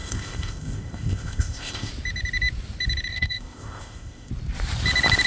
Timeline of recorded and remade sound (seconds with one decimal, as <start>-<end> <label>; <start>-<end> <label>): 0.0-1.9 remade; 1.9-3.1 recorded; 3.1-4.3 remade; 4.3-5.3 recorded